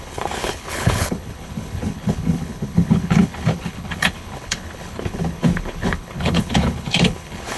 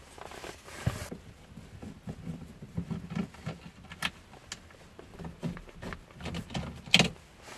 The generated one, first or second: first